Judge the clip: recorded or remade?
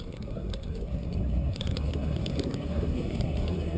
remade